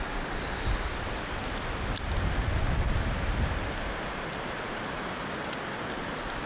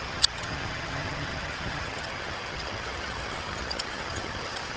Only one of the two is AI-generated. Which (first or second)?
second